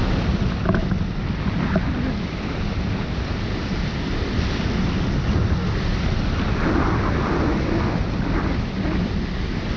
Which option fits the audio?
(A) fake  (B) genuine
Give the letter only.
B